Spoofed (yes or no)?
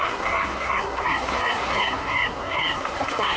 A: yes